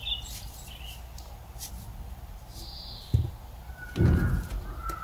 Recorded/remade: recorded